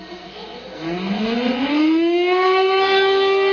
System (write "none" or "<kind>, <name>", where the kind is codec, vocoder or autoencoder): codec, SNAC